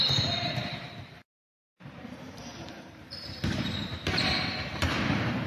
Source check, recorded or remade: remade